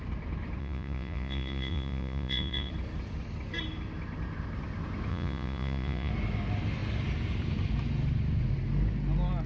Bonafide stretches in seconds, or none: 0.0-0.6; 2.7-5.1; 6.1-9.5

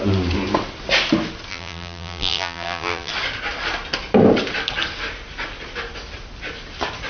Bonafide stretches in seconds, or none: 0.0-1.5; 3.1-7.1

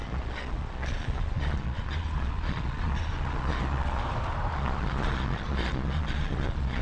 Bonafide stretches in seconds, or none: 4.0-4.5